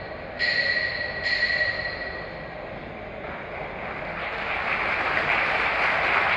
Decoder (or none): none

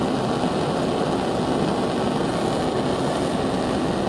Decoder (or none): none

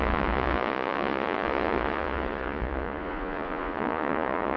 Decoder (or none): vocoder, Vocos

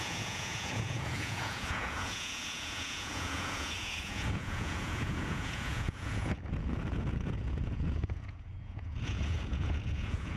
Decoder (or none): vocoder, Vocos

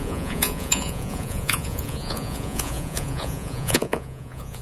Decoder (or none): vocoder, Vocos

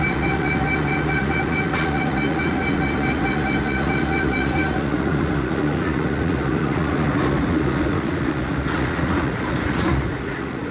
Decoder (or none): vocoder, Vocos